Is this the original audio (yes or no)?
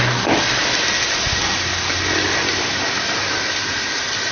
yes